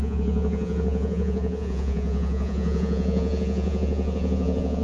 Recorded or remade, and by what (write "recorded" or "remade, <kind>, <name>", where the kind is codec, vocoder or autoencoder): remade, vocoder, Vocos